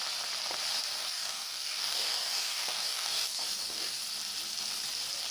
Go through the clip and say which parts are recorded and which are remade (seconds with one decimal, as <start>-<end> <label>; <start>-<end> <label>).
0.0-1.0 recorded; 1.0-4.0 remade; 4.0-5.3 recorded